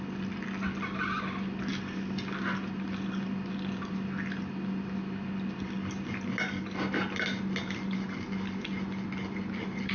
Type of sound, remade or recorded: recorded